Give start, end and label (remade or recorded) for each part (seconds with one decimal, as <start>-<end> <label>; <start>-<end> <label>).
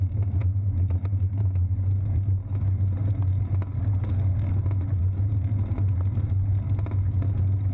0.0-7.7 recorded